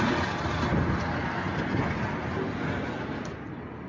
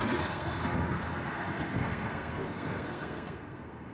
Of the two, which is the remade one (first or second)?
second